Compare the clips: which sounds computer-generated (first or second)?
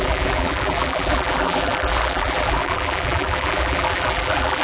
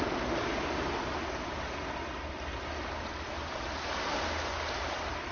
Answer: first